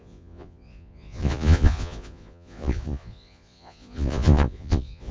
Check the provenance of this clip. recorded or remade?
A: remade